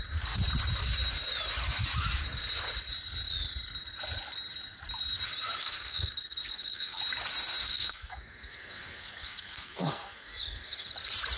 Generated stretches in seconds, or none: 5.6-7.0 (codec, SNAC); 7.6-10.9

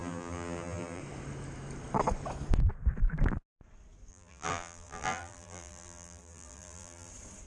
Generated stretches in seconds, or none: 0.0-1.0 (vocoder, BigVGAN v2); 4.1-7.1